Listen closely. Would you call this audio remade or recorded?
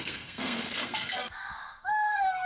remade